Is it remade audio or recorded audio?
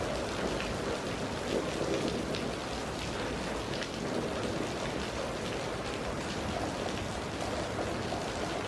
recorded